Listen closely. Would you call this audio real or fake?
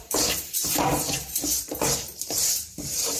fake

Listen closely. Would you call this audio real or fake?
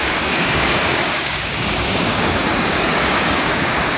fake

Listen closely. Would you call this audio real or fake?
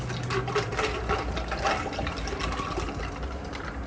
real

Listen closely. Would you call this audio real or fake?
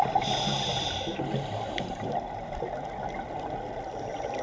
real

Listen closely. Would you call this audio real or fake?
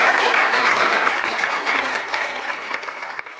fake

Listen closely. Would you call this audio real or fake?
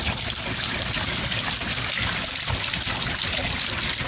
real